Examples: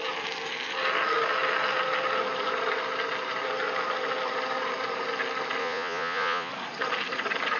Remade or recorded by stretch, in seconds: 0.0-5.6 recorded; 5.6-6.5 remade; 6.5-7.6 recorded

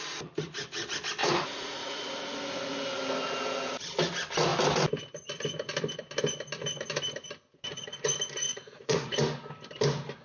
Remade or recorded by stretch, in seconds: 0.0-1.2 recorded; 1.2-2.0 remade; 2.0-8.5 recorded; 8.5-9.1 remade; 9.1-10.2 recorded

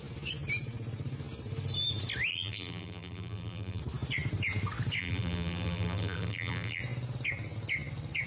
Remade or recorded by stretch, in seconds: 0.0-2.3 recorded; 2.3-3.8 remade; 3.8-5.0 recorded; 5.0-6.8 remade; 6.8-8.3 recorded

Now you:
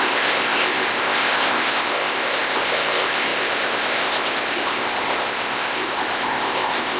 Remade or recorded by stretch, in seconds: 0.0-7.0 remade

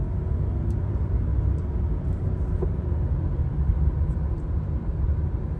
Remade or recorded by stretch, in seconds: 0.0-0.6 recorded; 0.6-1.3 remade; 1.3-4.3 recorded; 4.3-5.6 remade

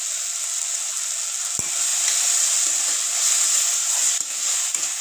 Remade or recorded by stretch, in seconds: 0.0-5.0 recorded